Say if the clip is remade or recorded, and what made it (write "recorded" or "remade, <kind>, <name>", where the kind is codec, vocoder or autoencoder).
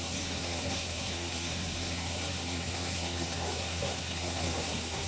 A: remade, codec, SNAC